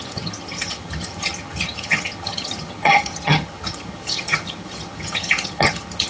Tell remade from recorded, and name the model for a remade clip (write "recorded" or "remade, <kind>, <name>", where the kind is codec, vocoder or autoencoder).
remade, vocoder, HiFi-GAN